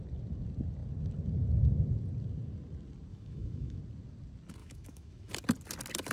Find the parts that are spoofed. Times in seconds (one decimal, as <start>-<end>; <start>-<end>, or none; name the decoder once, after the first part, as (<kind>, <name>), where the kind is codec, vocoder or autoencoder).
3.1-3.8 (autoencoder, DAC-VAE); 4.6-5.3